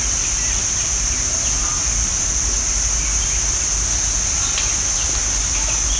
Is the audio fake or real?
real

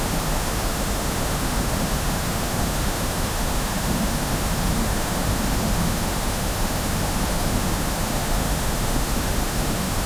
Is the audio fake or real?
fake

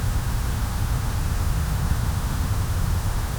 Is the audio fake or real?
fake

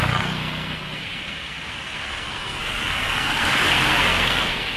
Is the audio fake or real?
fake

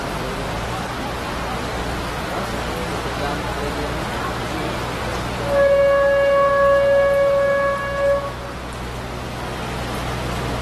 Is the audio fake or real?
real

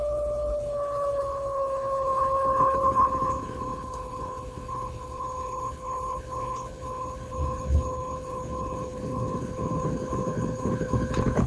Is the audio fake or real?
fake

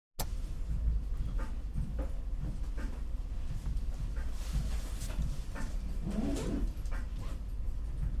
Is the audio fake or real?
real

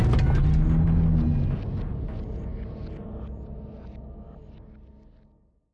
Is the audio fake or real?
real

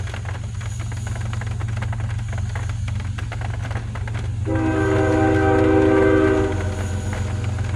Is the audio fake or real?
real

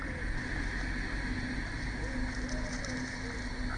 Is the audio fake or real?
real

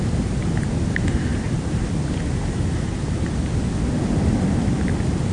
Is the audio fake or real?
real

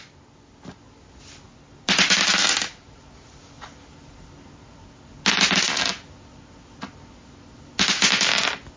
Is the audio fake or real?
real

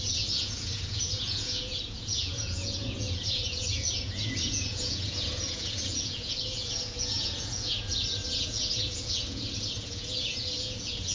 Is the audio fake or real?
fake